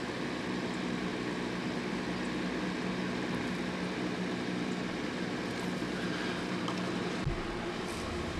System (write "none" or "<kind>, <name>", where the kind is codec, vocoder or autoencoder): none